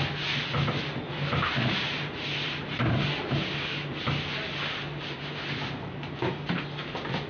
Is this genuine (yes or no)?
yes